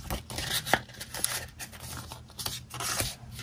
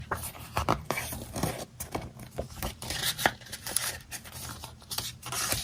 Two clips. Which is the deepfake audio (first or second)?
second